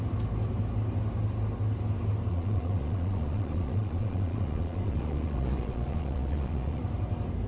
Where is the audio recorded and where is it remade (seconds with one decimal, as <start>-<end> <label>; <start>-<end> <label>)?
0.0-2.3 recorded; 2.3-6.8 remade; 6.8-7.5 recorded